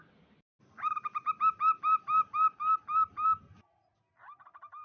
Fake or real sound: real